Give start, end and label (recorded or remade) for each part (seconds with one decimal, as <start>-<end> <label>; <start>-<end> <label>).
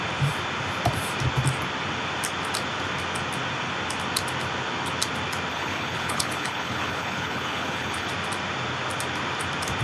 0.0-5.5 recorded; 5.5-8.1 remade; 8.1-9.8 recorded